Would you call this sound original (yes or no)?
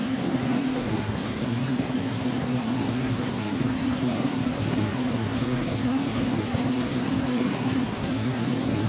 no